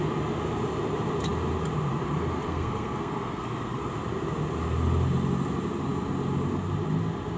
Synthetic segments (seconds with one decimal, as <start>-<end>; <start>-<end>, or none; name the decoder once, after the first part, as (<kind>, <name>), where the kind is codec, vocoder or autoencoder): 2.5-3.8 (codec, SNAC)